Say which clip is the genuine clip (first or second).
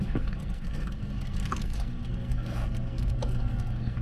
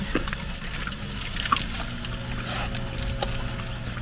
second